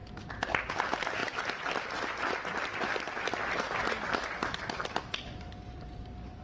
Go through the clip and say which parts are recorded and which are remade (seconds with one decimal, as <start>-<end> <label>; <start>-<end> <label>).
0.0-0.7 recorded; 0.7-1.2 remade; 1.2-5.0 recorded; 5.0-6.4 remade